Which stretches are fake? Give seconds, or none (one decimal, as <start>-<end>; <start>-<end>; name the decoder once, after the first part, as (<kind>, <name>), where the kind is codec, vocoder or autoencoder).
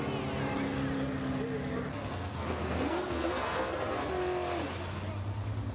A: 1.9-4.1 (codec, SNAC)